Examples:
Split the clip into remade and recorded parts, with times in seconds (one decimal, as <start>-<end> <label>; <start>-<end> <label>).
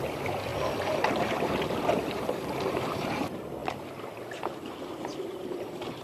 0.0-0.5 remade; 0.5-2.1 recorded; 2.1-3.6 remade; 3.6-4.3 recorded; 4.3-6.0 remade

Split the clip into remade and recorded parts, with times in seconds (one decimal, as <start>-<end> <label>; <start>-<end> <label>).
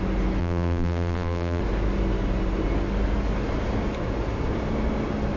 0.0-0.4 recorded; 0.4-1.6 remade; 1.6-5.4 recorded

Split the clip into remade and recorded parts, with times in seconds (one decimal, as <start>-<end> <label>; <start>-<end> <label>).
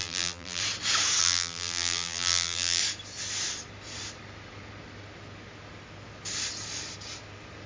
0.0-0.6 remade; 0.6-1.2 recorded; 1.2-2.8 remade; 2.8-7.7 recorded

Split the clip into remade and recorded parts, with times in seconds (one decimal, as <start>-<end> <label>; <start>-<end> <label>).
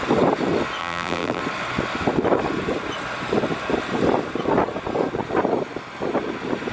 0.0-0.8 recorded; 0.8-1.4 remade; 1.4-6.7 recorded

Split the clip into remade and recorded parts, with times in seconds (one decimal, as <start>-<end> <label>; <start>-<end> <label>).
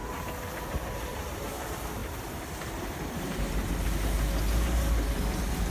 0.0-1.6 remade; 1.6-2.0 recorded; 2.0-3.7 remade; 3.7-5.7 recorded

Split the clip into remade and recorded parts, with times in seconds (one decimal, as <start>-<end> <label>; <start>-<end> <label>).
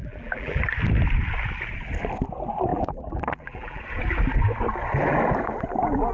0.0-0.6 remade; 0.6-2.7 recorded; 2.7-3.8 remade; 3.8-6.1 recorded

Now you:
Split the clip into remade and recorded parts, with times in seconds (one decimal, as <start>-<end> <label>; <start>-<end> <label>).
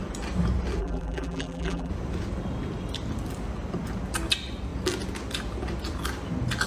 0.0-0.8 recorded; 0.8-1.9 remade; 1.9-6.7 recorded